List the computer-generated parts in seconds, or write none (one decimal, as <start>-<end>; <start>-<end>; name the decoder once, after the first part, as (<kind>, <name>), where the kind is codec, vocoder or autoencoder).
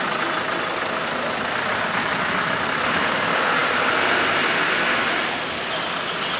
2.0-2.6 (autoencoder, DAC-VAE)